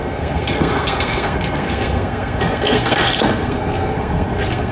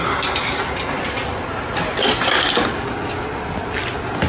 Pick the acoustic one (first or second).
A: second